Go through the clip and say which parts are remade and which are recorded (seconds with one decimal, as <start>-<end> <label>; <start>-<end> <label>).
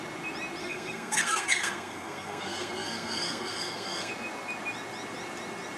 0.0-0.6 recorded; 0.6-4.1 remade; 4.1-5.8 recorded